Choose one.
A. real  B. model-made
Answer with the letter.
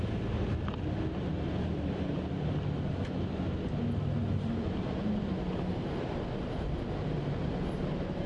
A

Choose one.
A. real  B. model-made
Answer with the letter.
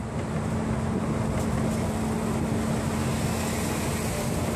A